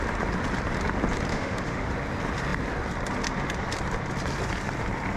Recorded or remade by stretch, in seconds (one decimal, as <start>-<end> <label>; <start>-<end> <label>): 0.0-1.3 recorded; 1.3-1.9 remade; 1.9-5.2 recorded